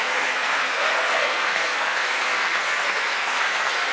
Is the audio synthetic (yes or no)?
yes